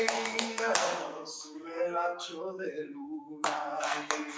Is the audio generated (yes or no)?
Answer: yes